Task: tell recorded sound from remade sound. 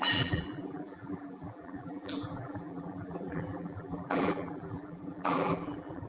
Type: remade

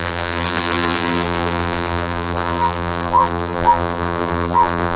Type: remade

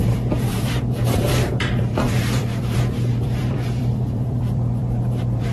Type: remade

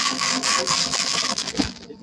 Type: remade